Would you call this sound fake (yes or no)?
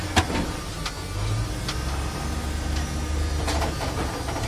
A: no